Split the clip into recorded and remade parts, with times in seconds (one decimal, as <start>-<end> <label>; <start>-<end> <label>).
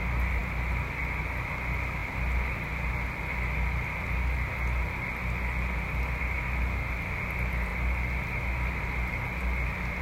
0.0-10.0 recorded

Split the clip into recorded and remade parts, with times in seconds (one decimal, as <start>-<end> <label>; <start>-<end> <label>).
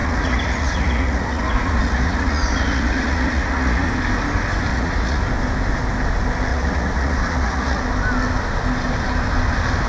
0.0-3.9 remade; 3.9-4.7 recorded; 4.7-5.2 remade; 5.2-6.5 recorded; 6.5-7.8 remade; 7.8-9.9 recorded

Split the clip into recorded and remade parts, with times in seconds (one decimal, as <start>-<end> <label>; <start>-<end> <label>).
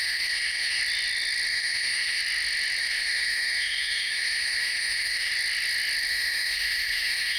0.0-0.8 remade; 0.8-1.5 recorded; 1.5-2.2 remade; 2.2-2.8 recorded; 2.8-5.3 remade; 5.3-6.1 recorded; 6.1-7.4 remade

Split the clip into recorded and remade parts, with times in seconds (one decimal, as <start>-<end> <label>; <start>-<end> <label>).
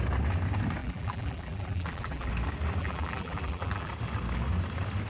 0.0-0.8 recorded; 0.8-2.3 remade; 2.3-2.8 recorded; 2.8-3.9 remade; 3.9-5.1 recorded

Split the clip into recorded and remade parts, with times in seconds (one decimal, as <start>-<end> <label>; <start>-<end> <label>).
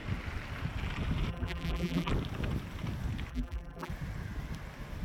0.0-1.3 recorded; 1.3-2.1 remade; 2.1-3.3 recorded; 3.3-3.9 remade; 3.9-5.0 recorded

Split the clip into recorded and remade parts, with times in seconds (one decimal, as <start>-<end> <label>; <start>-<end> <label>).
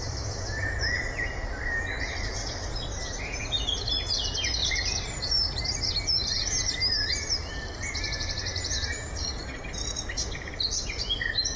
0.0-0.6 recorded; 0.6-1.3 remade; 1.3-2.4 recorded; 2.4-3.2 remade; 3.2-4.6 recorded; 4.6-6.3 remade; 6.3-8.5 recorded; 8.5-9.3 remade; 9.3-11.6 recorded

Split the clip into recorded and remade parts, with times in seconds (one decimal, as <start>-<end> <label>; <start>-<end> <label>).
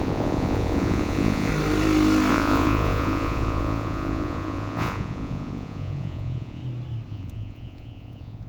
0.0-1.5 remade; 1.5-2.3 recorded; 2.3-6.6 remade; 6.6-7.1 recorded; 7.1-8.5 remade